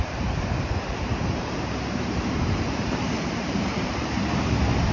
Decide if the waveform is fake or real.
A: fake